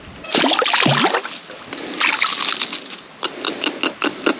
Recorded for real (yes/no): yes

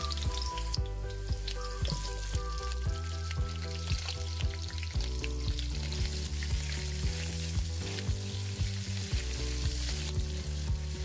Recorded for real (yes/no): yes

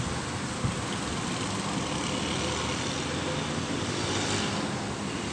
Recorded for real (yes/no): yes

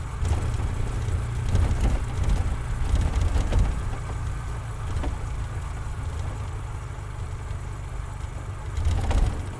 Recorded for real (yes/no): yes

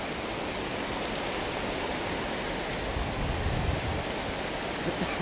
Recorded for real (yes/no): yes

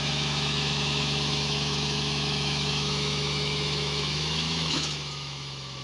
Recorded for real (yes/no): no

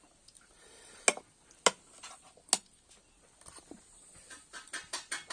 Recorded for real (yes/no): yes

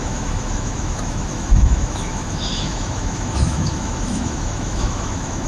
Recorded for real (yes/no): no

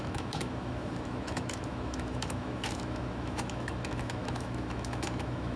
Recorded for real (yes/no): no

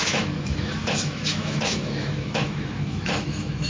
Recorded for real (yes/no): no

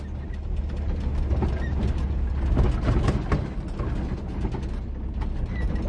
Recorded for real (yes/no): yes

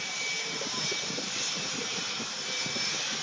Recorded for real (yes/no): yes